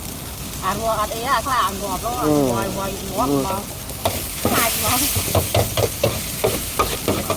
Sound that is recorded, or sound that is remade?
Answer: recorded